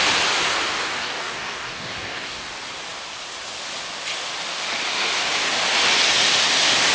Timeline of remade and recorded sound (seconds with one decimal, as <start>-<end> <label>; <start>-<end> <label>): 0.0-1.0 recorded; 1.0-2.5 remade; 2.5-6.9 recorded